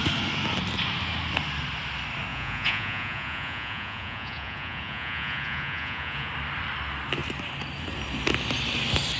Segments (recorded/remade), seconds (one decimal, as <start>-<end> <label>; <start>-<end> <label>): 0.0-2.3 recorded; 2.3-6.3 remade; 6.3-9.2 recorded